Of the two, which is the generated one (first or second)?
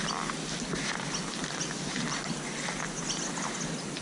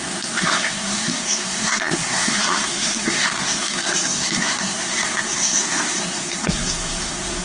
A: second